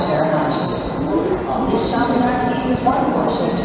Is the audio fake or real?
fake